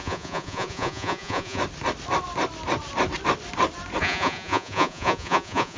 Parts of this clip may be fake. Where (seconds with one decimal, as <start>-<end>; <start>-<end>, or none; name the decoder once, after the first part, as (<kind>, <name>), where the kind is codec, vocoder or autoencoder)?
0.0-1.6 (vocoder, Vocos); 4.0-5.8